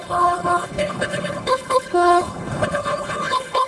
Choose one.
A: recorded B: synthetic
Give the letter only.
B